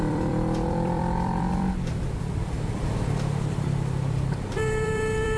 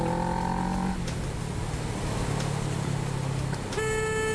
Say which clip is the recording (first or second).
second